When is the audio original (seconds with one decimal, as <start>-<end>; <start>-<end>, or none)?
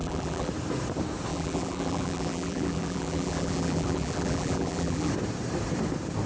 0.5-1.3; 5.1-6.3